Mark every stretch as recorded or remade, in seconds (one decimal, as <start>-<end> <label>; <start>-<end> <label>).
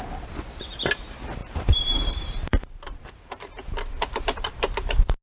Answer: 0.0-1.4 recorded; 1.4-4.5 remade; 4.5-5.2 recorded